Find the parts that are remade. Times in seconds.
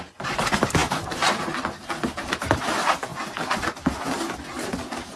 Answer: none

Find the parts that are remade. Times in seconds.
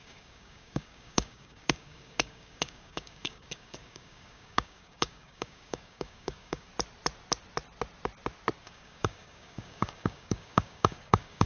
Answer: 0.0-6.7 (codec, DAC); 8.6-11.5